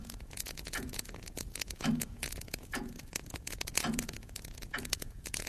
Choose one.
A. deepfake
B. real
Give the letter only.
A